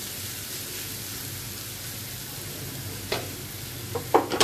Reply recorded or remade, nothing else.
recorded